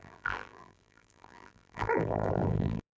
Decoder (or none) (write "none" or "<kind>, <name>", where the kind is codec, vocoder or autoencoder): vocoder, BigVGAN v2